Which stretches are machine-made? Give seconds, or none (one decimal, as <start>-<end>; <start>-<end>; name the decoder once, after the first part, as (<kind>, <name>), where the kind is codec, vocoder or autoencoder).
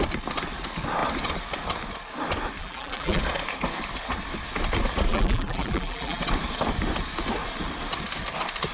2.6-3.2 (vocoder, BigVGAN v2); 5.1-6.2